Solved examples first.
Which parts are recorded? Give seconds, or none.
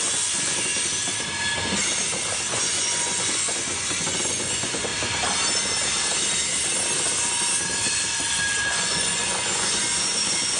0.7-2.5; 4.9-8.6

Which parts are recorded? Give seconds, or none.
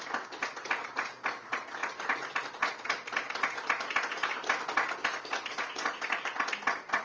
0.0-7.0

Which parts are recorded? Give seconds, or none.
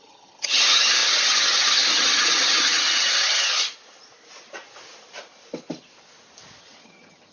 3.6-6.6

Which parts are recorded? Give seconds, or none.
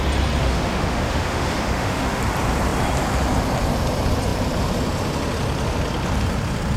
0.0-0.4; 2.2-6.8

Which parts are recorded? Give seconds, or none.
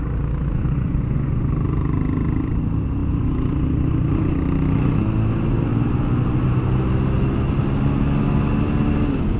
0.0-0.5; 1.5-9.4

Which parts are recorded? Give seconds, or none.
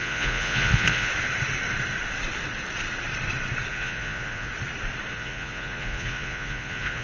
1.1-3.7; 4.5-5.1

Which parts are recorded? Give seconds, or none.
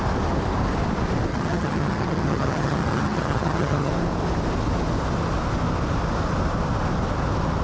0.0-1.3; 3.9-7.6